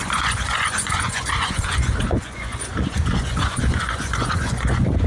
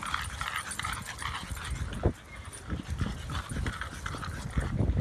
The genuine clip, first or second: second